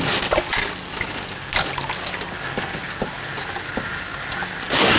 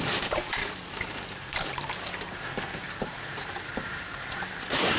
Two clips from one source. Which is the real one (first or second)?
first